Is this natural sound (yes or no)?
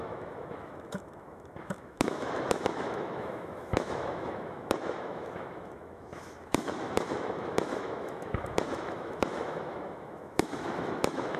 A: no